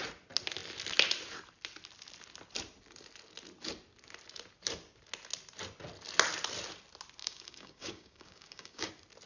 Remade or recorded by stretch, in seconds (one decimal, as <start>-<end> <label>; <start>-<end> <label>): 0.0-7.2 recorded; 7.2-8.9 remade; 8.9-9.3 recorded